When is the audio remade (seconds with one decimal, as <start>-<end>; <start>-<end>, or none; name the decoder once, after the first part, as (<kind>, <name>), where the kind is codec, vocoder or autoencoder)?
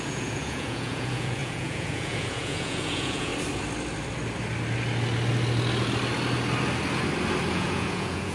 0.0-3.3 (vocoder, Vocos); 7.5-8.3